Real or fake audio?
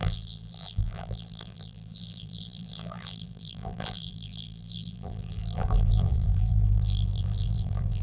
fake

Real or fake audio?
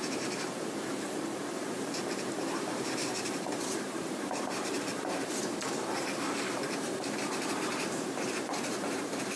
fake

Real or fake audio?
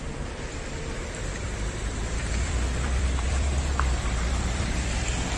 fake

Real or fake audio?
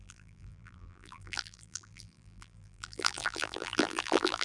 fake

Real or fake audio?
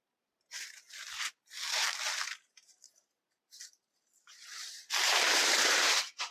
fake